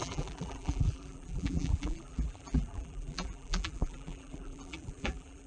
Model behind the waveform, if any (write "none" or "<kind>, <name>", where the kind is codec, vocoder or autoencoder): vocoder, BigVGAN v2